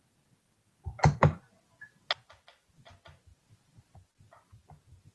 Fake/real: real